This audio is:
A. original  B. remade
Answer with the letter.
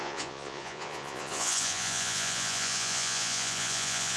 B